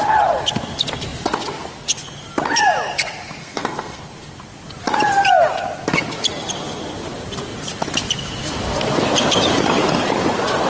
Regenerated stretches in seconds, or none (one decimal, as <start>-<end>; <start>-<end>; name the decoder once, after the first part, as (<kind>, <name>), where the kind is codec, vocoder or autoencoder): 3.4-4.0 (codec, SNAC)